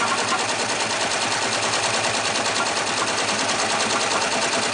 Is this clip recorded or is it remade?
recorded